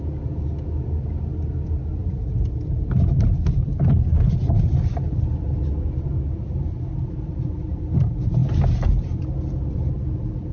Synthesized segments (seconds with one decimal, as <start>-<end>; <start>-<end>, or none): 2.0-3.5; 4.1-5.0; 8.4-10.5